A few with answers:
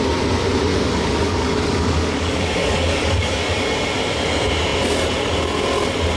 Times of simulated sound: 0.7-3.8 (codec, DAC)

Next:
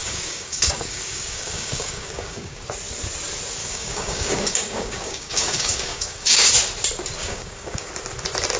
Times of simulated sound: 0.0-2.6 (codec, DAC); 3.6-6.5; 7.2-7.9

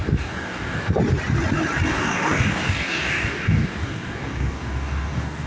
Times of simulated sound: 0.0-0.9 (codec, DAC); 1.9-5.5

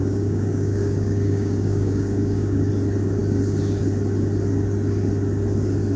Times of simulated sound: 0.0-2.7 (codec, DAC)